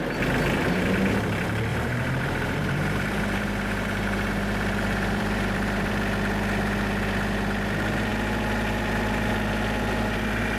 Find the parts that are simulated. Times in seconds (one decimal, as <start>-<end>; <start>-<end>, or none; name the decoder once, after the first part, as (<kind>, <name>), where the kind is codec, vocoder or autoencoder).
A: 1.7-5.9 (vocoder, BigVGAN v2)